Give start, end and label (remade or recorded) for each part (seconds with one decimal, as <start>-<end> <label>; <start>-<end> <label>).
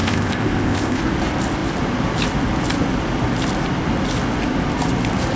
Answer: 0.0-1.0 remade; 1.0-5.4 recorded